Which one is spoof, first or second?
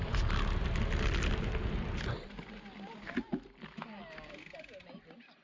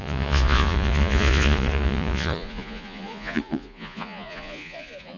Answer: second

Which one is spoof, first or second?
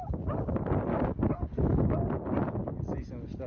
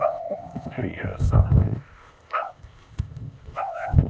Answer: second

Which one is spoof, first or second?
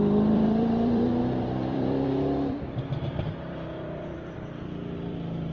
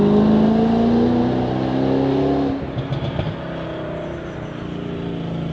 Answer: first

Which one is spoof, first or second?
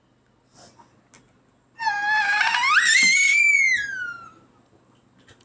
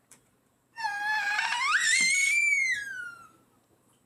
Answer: second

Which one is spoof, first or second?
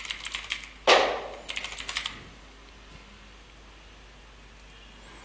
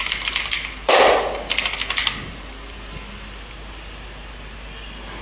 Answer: second